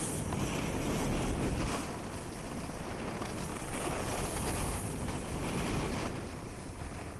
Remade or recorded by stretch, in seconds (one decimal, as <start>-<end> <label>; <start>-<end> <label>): 0.0-7.2 recorded